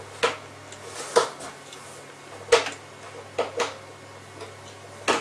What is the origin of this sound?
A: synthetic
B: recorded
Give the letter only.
B